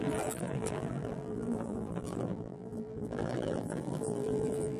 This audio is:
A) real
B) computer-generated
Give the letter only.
B